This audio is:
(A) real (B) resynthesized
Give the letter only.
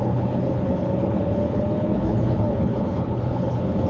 B